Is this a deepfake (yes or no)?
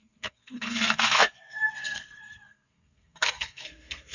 yes